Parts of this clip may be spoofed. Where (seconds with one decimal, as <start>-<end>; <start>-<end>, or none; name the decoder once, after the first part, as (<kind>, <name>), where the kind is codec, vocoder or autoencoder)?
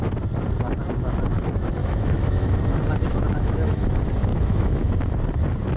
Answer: 1.8-2.5 (autoencoder, DAC-VAE); 3.1-3.9; 4.3-4.9